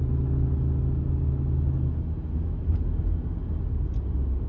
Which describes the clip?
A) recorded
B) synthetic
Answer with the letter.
A